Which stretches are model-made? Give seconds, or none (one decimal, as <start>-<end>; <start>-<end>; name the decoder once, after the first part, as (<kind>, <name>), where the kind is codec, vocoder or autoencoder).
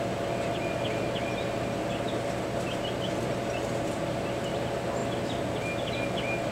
none